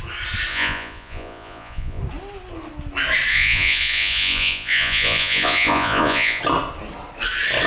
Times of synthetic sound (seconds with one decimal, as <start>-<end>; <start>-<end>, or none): 0.5-2.0; 3.3-6.4